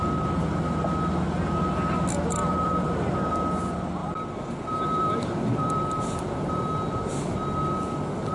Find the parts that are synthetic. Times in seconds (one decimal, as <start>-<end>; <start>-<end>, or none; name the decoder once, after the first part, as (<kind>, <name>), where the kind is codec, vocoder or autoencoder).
2.4-3.1 (vocoder, BigVGAN v2); 4.0-6.7